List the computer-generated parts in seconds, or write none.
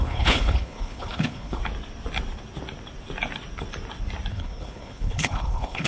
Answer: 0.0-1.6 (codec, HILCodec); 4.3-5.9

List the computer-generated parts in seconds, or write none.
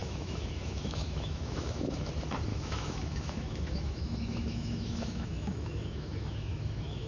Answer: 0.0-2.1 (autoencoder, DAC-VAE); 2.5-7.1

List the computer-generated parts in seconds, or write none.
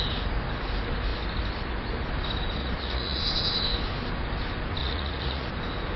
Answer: 2.6-3.2 (vocoder, Vocos); 4.8-5.5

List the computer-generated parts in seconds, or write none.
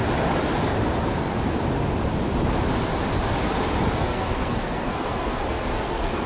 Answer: 4.0-6.3 (codec, SNAC)